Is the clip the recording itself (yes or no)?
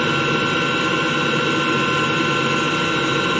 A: yes